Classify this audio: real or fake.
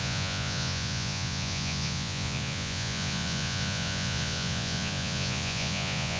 fake